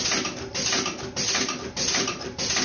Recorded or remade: recorded